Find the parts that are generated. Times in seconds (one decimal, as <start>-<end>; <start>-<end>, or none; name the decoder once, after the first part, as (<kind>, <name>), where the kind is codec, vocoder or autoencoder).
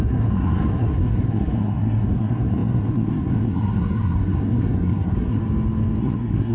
0.0-5.4 (codec, SNAC); 6.0-6.5